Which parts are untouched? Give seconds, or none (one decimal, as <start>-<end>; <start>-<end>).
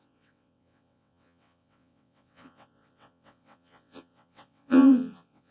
none